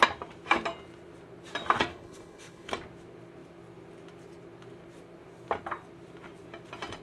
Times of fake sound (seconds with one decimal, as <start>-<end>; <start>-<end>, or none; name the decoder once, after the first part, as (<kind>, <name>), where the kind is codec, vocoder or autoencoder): 1.9-2.7 (codec, HILCodec)